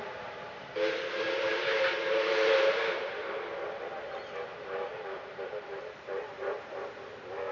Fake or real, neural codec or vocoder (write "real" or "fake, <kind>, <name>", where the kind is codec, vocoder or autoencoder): fake, vocoder, BigVGAN v2